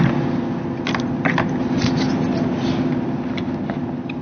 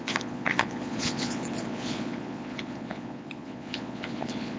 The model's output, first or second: second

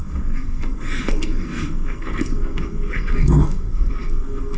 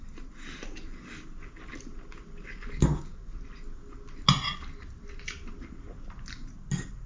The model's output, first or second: first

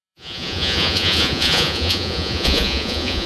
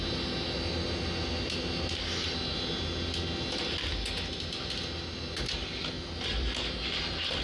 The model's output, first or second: first